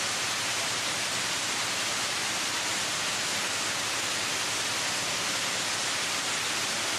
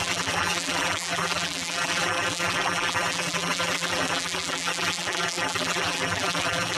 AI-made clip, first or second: second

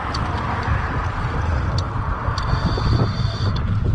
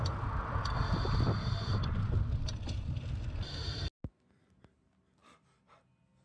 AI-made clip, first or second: first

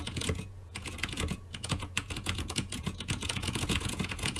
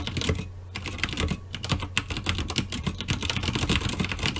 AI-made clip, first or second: first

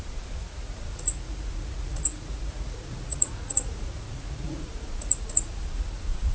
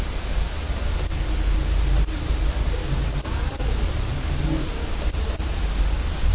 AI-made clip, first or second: first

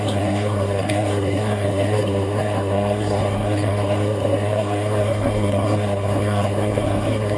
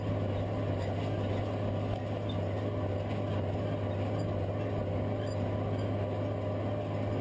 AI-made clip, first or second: first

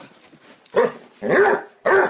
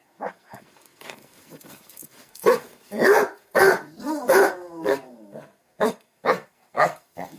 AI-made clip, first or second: second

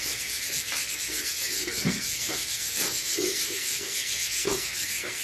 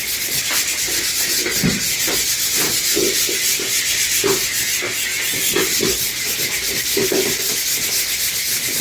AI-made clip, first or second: first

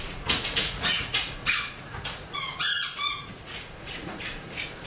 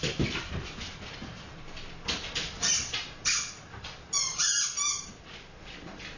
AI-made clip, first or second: first